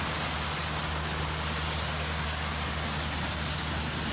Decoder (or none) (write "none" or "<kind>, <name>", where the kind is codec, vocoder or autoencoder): none